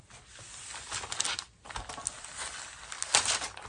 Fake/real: real